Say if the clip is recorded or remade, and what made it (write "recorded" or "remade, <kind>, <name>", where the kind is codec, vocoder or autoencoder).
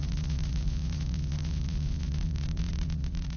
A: remade, vocoder, Vocos